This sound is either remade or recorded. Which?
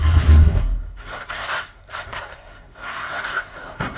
remade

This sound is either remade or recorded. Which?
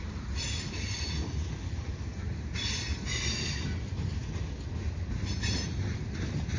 recorded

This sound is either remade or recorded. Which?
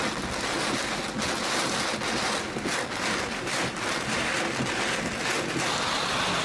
recorded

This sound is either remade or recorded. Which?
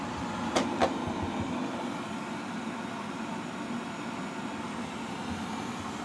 recorded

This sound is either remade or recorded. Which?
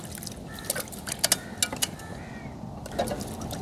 recorded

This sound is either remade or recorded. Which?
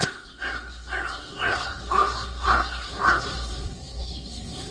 remade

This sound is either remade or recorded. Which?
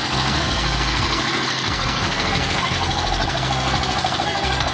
remade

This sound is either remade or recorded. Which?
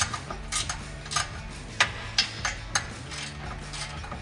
recorded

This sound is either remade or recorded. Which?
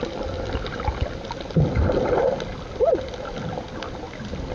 recorded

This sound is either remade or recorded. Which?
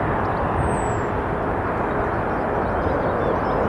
recorded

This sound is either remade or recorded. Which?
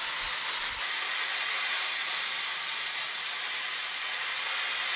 recorded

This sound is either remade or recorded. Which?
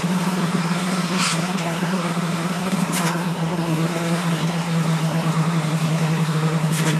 remade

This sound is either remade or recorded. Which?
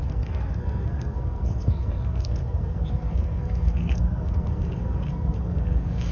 remade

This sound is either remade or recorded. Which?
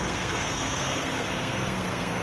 remade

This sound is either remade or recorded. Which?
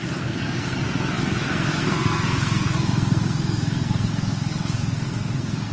remade